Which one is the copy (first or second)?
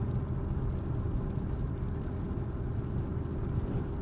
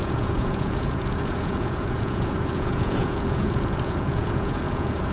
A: second